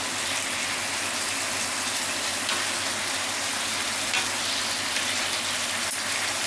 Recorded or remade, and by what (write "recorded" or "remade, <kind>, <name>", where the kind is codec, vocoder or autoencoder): recorded